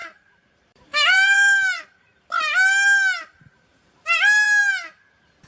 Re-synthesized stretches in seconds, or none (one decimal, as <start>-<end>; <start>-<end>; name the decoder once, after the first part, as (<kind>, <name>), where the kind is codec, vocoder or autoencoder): 0.0-1.8 (vocoder, BigVGAN v2); 3.7-4.6